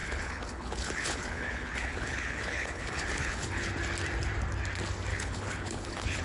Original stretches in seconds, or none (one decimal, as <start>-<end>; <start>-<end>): 3.7-5.1